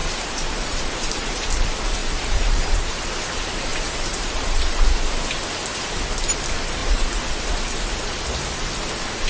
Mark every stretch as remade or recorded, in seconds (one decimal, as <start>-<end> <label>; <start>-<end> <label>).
0.0-1.5 remade; 1.5-2.0 recorded; 2.0-3.1 remade; 3.1-3.7 recorded; 3.7-4.8 remade; 4.8-6.8 recorded; 6.8-7.3 remade; 7.3-9.3 recorded